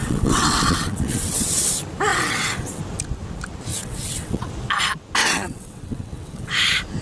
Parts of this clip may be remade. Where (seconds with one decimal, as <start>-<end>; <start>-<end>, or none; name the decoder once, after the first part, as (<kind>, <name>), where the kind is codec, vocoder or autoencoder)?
0.0-1.7 (vocoder, WaveNeXt); 2.1-2.8; 3.7-4.5; 5.2-6.5